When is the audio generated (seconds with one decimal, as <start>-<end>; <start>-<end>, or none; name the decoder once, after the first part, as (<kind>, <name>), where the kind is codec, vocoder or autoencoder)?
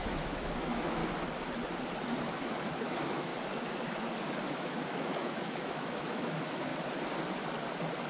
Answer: 0.0-1.0 (autoencoder, DAC-VAE); 2.2-3.3; 4.5-6.7